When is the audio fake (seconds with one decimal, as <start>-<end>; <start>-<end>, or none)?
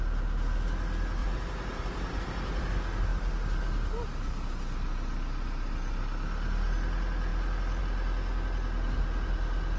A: 1.2-2.2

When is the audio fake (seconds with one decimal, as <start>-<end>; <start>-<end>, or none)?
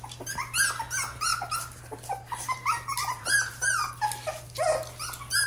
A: 1.3-3.9